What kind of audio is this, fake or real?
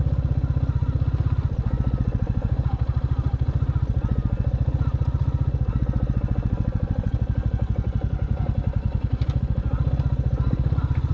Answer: real